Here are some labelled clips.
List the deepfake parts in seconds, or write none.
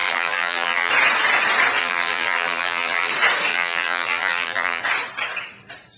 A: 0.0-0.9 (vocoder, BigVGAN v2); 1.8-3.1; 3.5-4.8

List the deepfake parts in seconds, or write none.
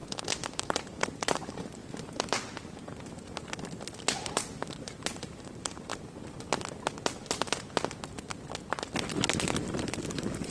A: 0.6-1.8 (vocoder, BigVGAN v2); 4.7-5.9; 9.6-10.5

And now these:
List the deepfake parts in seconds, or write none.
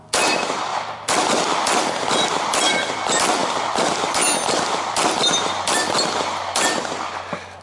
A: 0.7-1.4 (vocoder, BigVGAN v2); 3.4-5.5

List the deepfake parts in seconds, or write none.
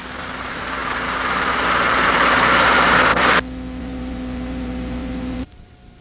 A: 0.0-3.1 (vocoder, BigVGAN v2); 3.8-6.0